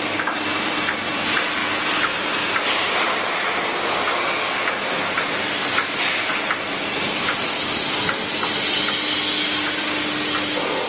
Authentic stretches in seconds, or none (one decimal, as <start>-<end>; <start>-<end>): 0.0-3.7; 4.6-10.9